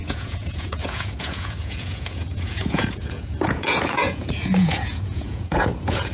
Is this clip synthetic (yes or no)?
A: yes